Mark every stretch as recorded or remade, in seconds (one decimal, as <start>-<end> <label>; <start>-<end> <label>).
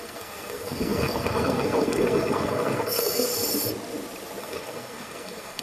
0.0-3.3 remade; 3.3-4.4 recorded; 4.4-5.6 remade